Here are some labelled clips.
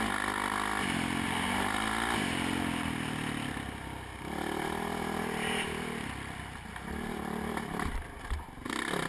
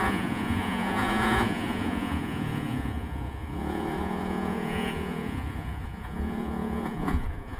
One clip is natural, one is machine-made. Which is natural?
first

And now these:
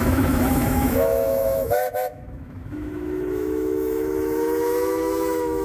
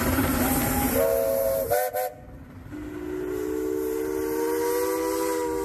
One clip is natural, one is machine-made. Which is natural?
second